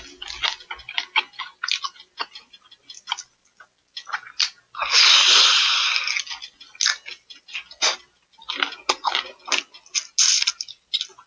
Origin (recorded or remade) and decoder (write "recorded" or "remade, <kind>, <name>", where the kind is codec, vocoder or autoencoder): recorded